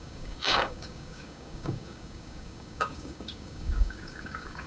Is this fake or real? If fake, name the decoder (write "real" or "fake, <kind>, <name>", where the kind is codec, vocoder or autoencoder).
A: fake, codec, DAC